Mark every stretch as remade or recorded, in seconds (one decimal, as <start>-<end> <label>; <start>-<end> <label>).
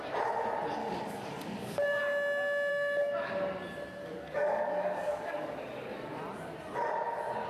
0.0-0.8 recorded; 0.8-2.0 remade; 2.0-2.7 recorded; 2.7-3.3 remade; 3.3-4.0 recorded; 4.0-6.2 remade; 6.2-7.5 recorded